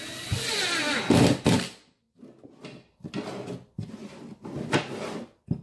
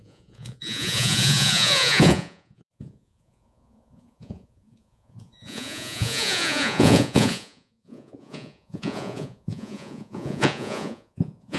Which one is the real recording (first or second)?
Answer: first